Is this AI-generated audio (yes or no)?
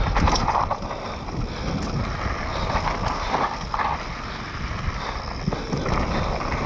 no